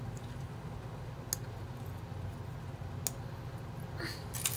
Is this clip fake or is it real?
real